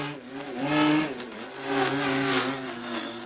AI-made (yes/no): no